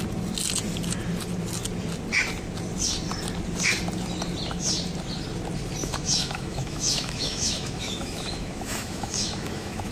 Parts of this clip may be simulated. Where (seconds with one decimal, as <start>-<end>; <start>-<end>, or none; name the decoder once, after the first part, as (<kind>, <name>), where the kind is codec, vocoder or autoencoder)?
5.8-9.9 (autoencoder, DAC-VAE)